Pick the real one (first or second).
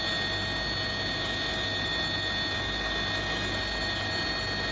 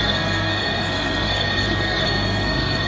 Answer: first